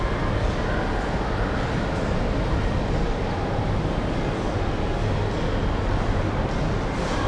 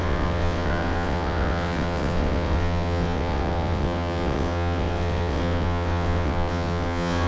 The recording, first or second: first